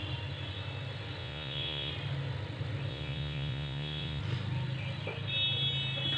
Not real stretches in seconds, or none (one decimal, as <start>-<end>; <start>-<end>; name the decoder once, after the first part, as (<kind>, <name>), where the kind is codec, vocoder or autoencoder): 1.2-1.9 (vocoder, Vocos); 2.9-4.2